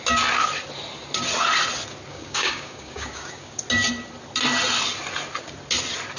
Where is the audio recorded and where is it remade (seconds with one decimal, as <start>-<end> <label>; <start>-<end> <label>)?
0.0-2.1 recorded; 2.1-3.6 remade; 3.6-6.2 recorded

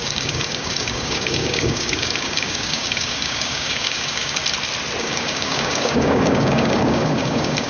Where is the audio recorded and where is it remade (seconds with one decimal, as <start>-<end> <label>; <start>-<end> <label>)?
0.0-4.4 remade; 4.4-5.0 recorded; 5.0-7.7 remade

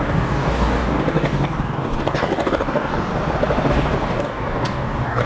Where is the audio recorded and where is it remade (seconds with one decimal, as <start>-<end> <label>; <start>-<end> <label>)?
0.0-3.1 remade; 3.1-3.7 recorded; 3.7-5.3 remade

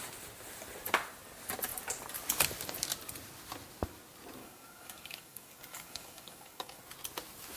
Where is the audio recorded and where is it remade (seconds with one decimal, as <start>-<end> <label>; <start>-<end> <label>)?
0.0-4.4 recorded; 4.4-6.8 remade; 6.8-7.6 recorded

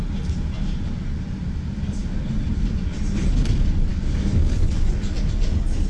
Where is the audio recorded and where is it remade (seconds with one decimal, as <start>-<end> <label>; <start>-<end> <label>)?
0.0-3.9 recorded; 3.9-4.9 remade; 4.9-5.9 recorded

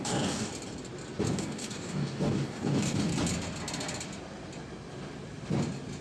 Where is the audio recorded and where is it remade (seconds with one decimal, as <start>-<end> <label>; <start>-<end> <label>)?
0.0-0.5 remade; 0.5-1.3 recorded; 1.3-3.1 remade; 3.1-6.0 recorded

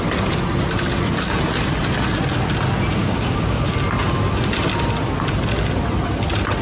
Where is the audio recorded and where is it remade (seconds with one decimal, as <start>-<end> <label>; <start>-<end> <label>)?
0.0-3.0 recorded; 3.0-3.7 remade; 3.7-6.6 recorded

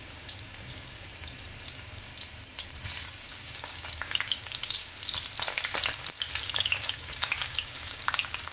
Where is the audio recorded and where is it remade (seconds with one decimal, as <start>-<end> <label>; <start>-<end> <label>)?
0.0-1.1 remade; 1.1-1.7 recorded; 1.7-2.1 remade; 2.1-3.3 recorded; 3.3-4.8 remade; 4.8-6.4 recorded; 6.4-8.5 remade